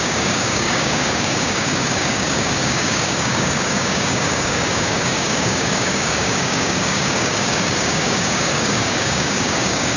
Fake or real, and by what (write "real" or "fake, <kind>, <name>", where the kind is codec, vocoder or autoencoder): fake, codec, DAC